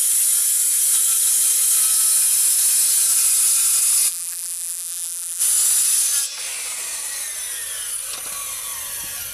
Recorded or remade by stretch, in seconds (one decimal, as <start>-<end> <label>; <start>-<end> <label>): 0.0-4.1 recorded; 4.1-5.4 remade; 5.4-9.3 recorded